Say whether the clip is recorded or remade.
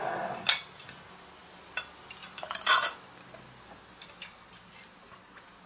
recorded